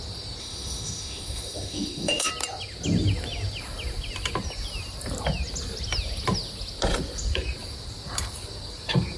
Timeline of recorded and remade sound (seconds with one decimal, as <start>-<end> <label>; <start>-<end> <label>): 0.0-0.4 recorded; 0.4-2.3 remade; 2.3-9.2 recorded